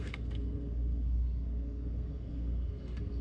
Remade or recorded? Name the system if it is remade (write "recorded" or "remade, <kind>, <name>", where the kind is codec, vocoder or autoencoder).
remade, codec, SNAC